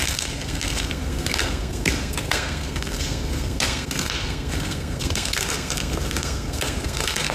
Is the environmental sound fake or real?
fake